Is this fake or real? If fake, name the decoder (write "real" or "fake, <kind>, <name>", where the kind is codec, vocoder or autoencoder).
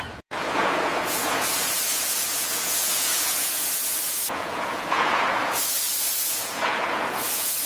fake, vocoder, Vocos